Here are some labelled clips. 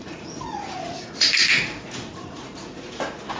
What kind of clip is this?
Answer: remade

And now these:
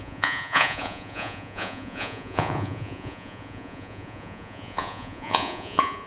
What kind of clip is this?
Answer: remade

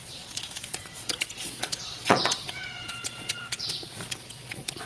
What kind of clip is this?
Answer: remade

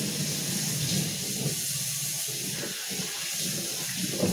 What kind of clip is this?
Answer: recorded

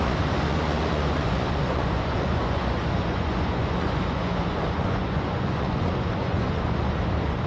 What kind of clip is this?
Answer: remade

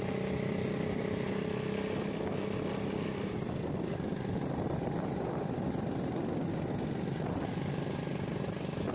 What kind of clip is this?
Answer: recorded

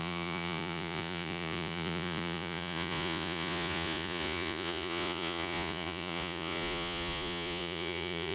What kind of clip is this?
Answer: remade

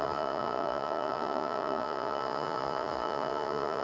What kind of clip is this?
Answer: remade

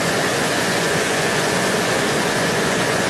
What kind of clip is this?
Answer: remade